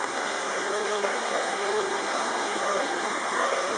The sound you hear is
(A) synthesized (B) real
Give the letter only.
A